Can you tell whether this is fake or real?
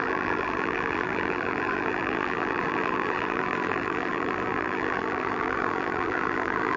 fake